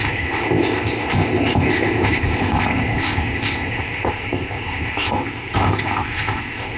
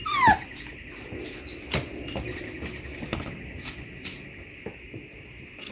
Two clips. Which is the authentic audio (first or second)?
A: second